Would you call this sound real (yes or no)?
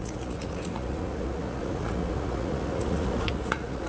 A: no